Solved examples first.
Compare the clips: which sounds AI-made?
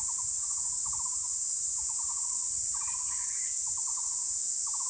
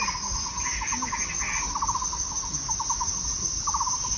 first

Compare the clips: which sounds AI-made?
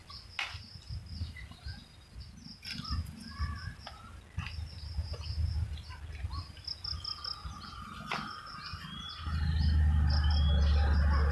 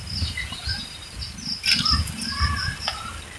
second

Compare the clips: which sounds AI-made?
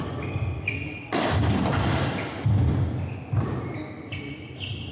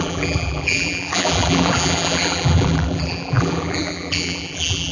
second